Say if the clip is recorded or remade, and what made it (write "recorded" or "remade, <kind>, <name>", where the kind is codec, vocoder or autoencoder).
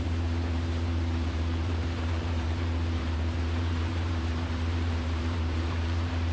remade, vocoder, BigVGAN v2